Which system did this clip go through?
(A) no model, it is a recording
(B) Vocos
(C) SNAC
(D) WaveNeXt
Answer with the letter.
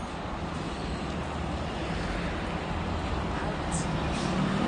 A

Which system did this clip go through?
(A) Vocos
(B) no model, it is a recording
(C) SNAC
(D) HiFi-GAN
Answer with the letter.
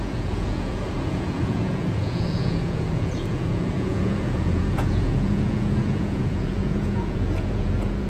A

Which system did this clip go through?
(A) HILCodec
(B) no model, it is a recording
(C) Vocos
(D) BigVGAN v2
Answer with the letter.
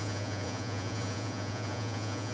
C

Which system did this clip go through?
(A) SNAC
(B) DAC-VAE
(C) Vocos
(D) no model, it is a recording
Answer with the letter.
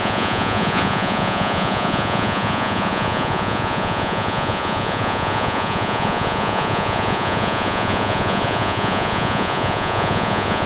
C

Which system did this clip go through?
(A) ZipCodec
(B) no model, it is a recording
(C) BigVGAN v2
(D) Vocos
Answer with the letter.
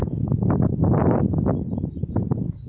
B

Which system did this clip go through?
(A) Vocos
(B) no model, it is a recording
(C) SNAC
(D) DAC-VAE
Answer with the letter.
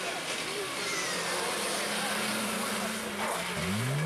B